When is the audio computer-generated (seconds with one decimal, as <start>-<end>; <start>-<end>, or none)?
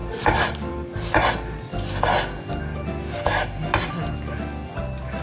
0.0-0.7